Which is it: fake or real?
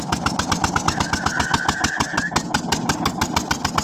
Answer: real